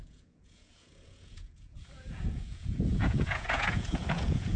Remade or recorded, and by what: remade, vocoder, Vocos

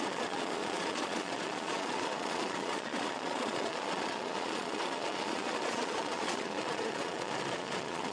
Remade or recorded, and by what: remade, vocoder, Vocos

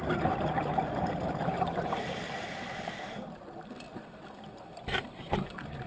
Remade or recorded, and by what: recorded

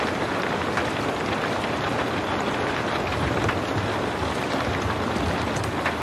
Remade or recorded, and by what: recorded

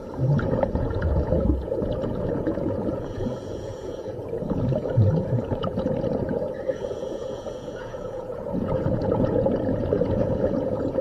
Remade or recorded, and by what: remade, vocoder, Vocos